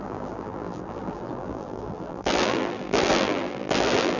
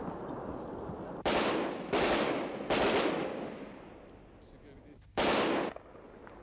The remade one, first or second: first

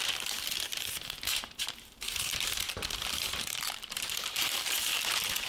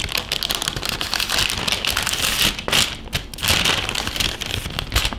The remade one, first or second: first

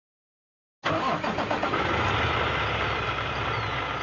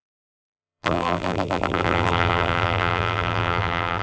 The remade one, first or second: second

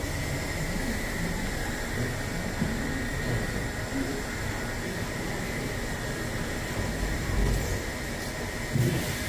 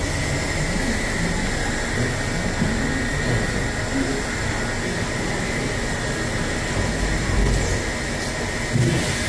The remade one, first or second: first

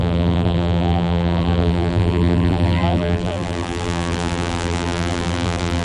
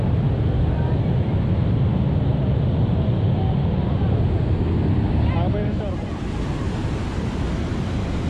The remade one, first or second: first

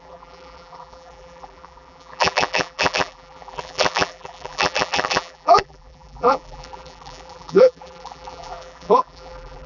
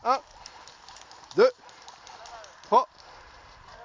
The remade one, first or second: first